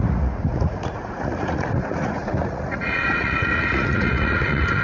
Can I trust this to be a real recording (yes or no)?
no